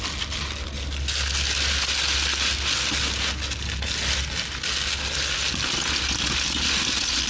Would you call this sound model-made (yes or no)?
no